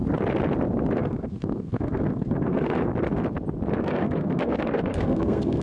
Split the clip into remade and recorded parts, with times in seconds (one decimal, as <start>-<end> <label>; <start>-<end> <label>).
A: 0.0-1.0 recorded; 1.0-2.9 remade; 2.9-3.8 recorded; 3.8-5.6 remade